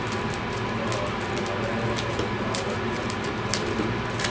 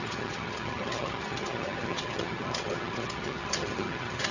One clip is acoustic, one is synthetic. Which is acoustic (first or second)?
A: first